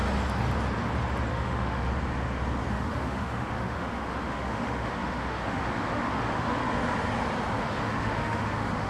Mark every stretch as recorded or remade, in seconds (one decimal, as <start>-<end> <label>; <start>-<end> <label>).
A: 0.0-1.3 recorded; 1.3-1.9 remade; 1.9-2.7 recorded; 2.7-6.6 remade; 6.6-7.6 recorded; 7.6-8.9 remade